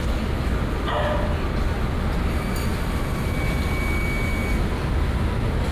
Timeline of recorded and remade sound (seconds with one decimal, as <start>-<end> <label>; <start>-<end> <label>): 0.0-5.7 recorded